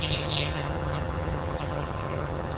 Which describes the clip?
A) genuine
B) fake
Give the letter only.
B